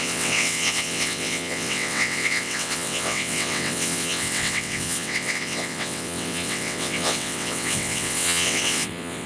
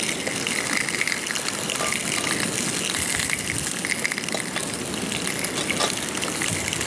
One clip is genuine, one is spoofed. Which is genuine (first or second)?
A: second